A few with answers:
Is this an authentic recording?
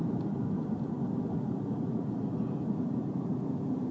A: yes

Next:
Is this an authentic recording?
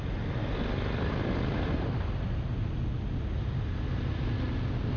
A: yes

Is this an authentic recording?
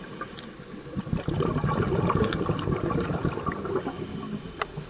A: yes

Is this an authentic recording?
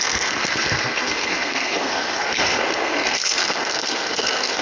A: no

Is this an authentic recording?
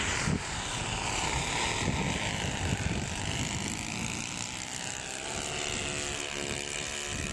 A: yes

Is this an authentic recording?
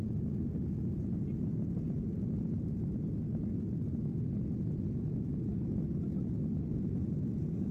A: yes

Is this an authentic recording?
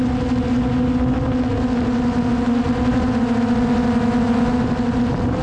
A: yes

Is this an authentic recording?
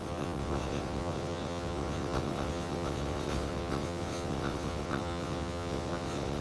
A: no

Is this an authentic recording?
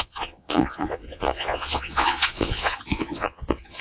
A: no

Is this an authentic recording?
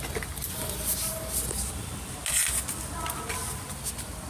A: yes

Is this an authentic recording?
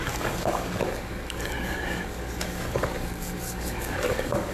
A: no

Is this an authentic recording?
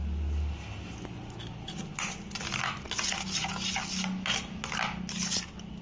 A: yes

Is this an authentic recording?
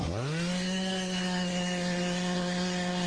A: no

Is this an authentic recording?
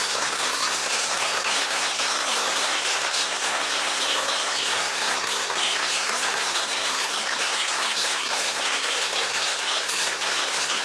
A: no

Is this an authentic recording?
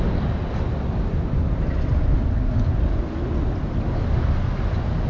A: yes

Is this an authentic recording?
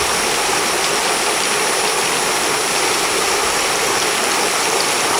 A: yes